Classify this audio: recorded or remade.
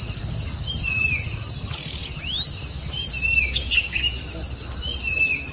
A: recorded